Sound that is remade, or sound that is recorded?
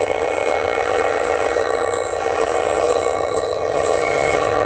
remade